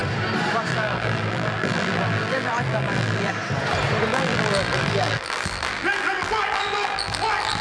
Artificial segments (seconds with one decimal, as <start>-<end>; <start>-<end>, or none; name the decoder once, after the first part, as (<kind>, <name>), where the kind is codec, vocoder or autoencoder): 0.7-3.3 (vocoder, BigVGAN v2); 4.1-7.6